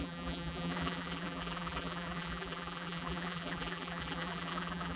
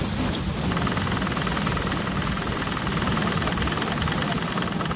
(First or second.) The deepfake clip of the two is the first